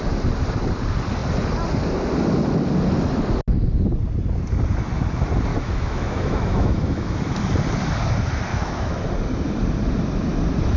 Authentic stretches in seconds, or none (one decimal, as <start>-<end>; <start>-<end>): 0.0-5.5; 7.4-8.5; 9.1-10.8